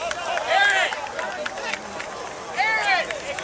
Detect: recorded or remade recorded